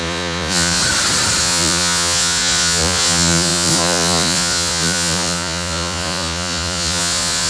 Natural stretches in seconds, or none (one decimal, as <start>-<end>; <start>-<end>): 0.8-1.4